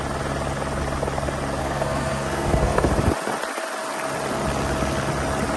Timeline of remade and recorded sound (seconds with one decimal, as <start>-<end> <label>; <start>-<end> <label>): 0.0-1.6 recorded; 1.6-2.9 remade; 2.9-5.6 recorded